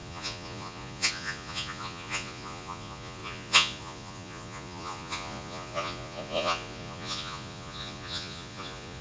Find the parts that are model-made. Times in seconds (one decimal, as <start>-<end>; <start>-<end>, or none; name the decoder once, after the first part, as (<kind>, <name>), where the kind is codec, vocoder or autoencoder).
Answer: 0.0-9.0 (vocoder, Vocos)